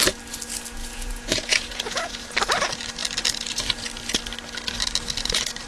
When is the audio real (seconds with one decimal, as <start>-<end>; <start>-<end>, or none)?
0.0-0.8; 2.3-5.7